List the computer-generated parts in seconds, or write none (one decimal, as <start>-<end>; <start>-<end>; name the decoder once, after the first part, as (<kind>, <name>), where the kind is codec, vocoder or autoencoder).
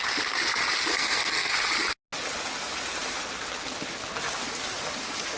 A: 0.9-1.5 (codec, SNAC)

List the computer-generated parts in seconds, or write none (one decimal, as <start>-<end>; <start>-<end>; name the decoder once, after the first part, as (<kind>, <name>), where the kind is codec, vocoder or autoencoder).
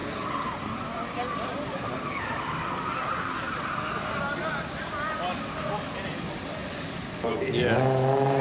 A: 0.0-4.2 (vocoder, BigVGAN v2); 6.6-7.1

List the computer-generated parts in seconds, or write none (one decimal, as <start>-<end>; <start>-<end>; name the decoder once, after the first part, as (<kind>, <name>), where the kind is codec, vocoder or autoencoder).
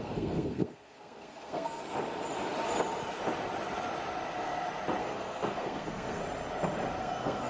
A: 0.0-1.8 (codec, SNAC); 5.0-6.2; 7.0-7.5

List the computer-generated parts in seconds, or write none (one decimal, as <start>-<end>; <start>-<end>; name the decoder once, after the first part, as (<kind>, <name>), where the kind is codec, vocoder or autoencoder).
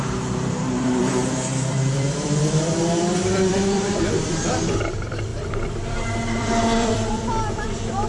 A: 0.0-8.1 (vocoder, BigVGAN v2)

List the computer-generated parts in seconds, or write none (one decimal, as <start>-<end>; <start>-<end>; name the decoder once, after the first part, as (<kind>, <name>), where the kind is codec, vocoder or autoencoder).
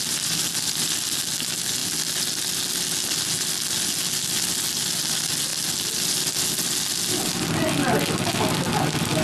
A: none